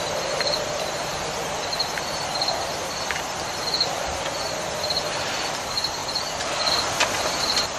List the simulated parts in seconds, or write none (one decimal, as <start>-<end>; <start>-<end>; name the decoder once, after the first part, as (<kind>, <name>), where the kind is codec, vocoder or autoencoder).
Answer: 1.1-2.2 (vocoder, BigVGAN v2)

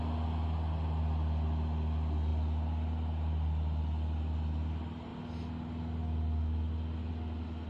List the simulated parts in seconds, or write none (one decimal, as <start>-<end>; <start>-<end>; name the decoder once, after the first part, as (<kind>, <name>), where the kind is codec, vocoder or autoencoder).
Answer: none

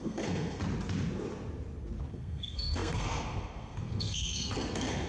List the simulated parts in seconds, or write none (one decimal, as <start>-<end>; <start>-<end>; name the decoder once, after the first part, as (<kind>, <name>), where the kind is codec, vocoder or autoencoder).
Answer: 0.0-0.6 (codec, SNAC); 2.1-5.1

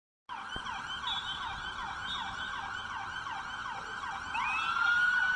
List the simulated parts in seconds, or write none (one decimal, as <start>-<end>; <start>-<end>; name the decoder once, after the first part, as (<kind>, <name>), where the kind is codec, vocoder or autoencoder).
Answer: none